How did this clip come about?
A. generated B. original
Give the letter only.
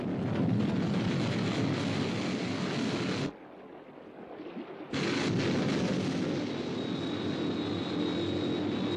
B